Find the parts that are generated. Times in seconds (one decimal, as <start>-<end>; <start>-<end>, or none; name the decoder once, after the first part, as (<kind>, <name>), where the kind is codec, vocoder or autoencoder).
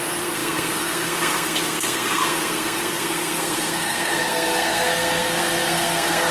0.0-6.3 (codec, SNAC)